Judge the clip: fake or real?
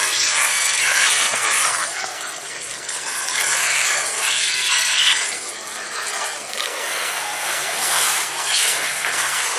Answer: fake